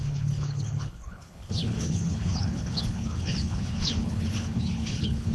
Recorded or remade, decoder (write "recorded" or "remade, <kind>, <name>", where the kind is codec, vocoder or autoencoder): remade, codec, HILCodec